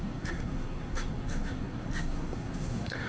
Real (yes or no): no